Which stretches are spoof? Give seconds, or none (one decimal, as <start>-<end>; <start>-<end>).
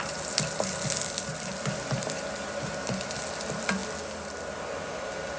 none